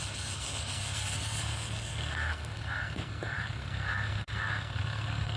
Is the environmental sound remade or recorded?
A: remade